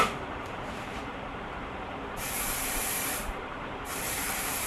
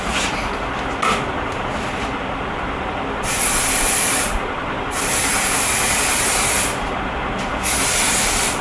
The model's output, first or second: first